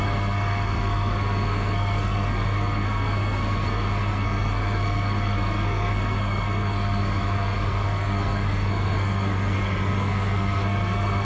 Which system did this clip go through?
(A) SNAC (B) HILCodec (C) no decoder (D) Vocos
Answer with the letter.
A